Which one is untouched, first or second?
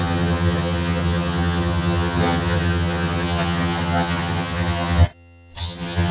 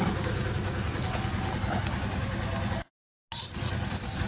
second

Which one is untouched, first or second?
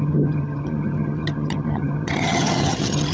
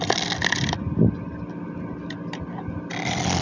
second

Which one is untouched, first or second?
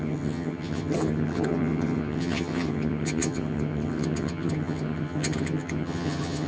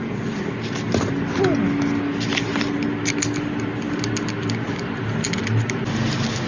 second